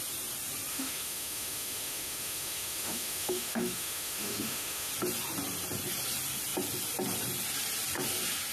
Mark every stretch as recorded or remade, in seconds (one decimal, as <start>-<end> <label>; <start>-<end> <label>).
0.0-0.7 recorded; 0.7-4.9 remade; 4.9-8.5 recorded